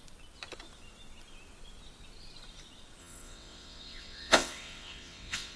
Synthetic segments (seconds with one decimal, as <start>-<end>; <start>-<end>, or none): 3.0-5.6